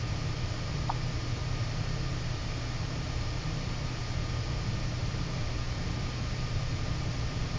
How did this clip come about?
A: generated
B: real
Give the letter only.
A